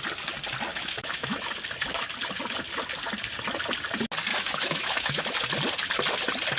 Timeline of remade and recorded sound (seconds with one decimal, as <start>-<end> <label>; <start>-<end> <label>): 0.0-0.7 recorded; 0.7-1.4 remade; 1.4-4.3 recorded; 4.3-5.2 remade; 5.2-6.6 recorded